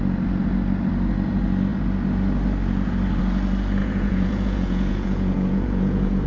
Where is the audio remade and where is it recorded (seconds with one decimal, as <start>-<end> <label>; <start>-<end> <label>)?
0.0-3.8 recorded; 3.8-6.3 remade